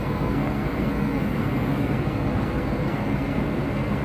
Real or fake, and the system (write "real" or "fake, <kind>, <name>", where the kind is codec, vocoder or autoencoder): fake, codec, SNAC